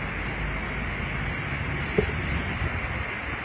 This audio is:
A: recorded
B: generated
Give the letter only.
A